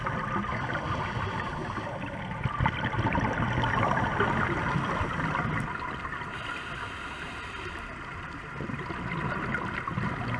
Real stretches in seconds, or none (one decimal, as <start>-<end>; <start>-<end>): 0.0-10.4